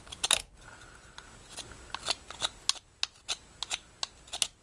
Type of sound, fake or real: real